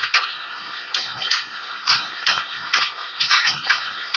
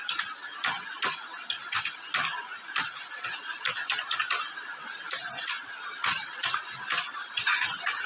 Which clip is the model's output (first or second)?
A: first